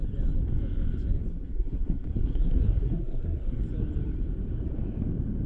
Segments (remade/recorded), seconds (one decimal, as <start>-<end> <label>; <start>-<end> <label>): 0.0-1.3 recorded; 1.3-3.6 remade; 3.6-5.5 recorded